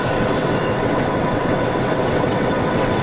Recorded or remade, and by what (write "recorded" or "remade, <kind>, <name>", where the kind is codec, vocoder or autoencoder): remade, vocoder, WaveNeXt